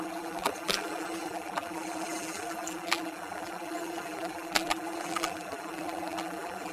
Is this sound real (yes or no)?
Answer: no